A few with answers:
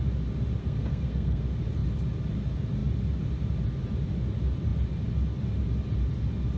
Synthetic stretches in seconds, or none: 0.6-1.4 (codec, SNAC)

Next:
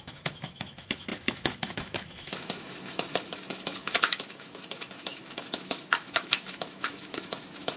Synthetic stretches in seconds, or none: 0.0-7.8 (autoencoder, DAC-VAE)

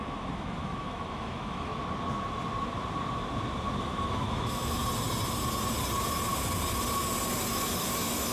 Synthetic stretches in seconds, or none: 0.0-1.7 (autoencoder, DAC-VAE); 3.8-4.8; 7.5-8.3

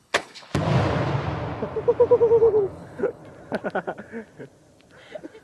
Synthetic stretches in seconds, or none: 0.0-0.5 (codec, HILCodec); 2.4-3.2